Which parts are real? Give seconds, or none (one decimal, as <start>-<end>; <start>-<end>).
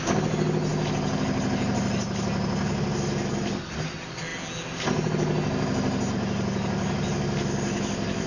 0.0-8.3